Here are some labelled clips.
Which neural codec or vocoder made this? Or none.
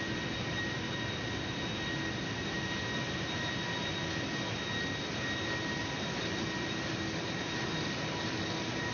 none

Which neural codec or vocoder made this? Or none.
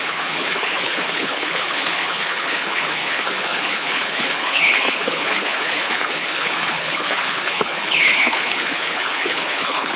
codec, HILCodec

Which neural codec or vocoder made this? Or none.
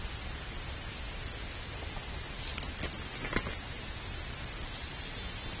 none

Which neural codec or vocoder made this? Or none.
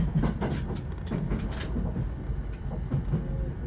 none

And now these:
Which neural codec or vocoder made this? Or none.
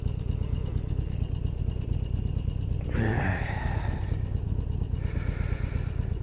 none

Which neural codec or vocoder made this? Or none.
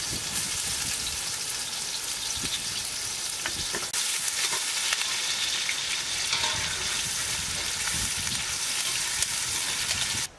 none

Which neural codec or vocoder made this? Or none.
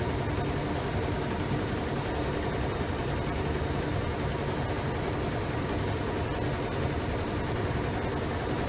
none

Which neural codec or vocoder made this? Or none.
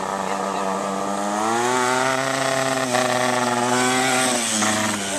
none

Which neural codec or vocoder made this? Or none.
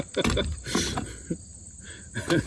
none